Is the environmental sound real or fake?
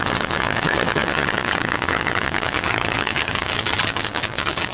fake